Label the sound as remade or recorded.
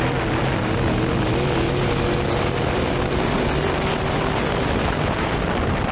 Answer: recorded